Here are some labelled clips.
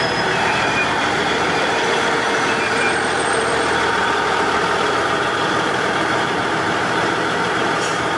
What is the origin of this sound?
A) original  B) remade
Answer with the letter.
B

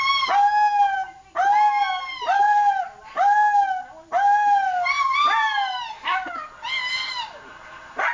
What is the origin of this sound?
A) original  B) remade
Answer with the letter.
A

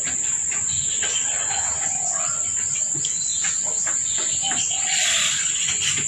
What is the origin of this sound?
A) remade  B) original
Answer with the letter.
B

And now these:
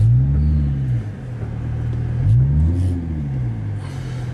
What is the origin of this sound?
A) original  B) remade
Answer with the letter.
A